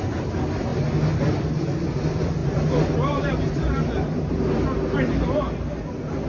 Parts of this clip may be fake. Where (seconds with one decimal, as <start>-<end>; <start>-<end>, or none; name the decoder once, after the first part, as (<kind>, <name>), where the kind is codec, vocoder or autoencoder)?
none